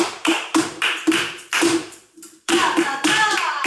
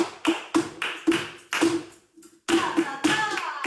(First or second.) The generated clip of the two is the first